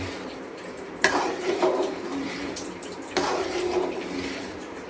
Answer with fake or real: fake